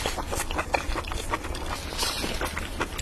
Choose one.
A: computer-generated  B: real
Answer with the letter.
B